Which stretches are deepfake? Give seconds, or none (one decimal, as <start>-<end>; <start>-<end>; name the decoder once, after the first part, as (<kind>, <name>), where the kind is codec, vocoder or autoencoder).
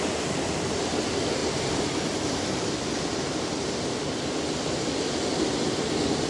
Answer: none